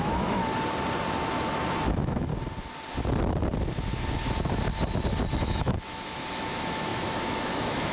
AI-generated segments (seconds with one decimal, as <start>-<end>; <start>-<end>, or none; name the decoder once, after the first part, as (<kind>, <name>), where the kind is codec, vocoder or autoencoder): 0.0-0.4 (autoencoder, DAC-VAE); 1.9-2.3; 5.4-7.9